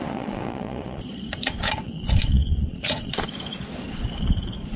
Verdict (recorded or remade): remade